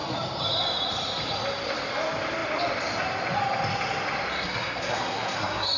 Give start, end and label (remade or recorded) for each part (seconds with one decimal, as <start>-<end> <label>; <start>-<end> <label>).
0.0-4.3 recorded; 4.3-5.8 remade